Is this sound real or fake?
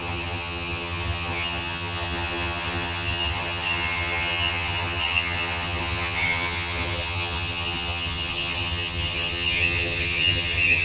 fake